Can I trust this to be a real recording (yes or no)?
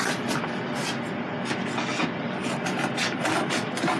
yes